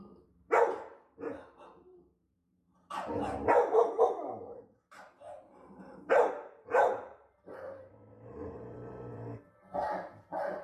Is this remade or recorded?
remade